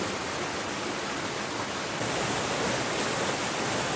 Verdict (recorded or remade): recorded